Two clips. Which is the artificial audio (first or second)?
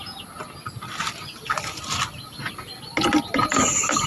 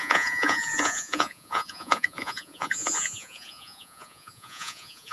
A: second